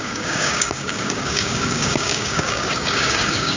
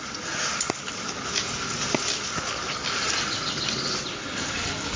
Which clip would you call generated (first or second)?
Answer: first